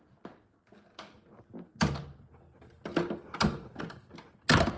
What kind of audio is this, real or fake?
real